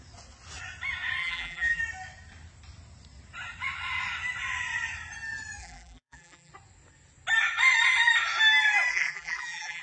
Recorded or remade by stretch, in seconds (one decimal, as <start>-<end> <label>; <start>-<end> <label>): 0.0-1.2 recorded; 1.2-1.8 remade; 1.8-5.6 recorded; 5.6-6.5 remade; 6.5-8.9 recorded; 8.9-9.8 remade